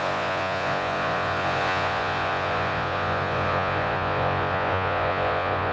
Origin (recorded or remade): remade